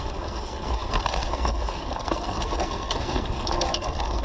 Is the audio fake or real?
fake